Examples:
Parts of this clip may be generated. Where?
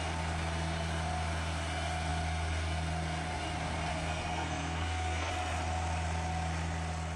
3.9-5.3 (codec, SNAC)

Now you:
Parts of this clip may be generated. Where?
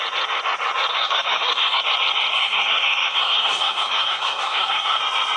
0.9-1.8 (codec, SNAC); 2.4-5.0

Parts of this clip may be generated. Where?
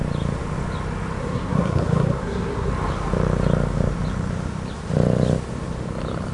1.2-2.7 (codec, SNAC)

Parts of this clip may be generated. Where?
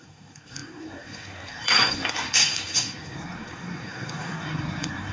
0.0-5.1 (codec, SNAC)